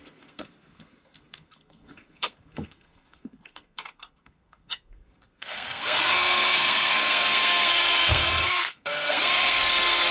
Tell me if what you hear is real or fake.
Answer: fake